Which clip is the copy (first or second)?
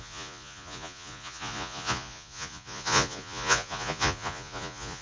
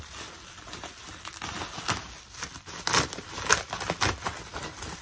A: first